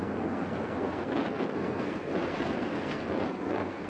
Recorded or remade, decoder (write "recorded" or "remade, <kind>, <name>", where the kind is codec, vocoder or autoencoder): remade, codec, SNAC